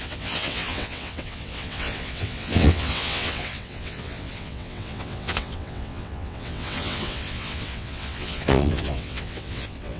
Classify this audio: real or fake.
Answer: fake